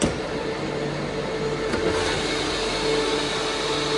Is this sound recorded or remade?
recorded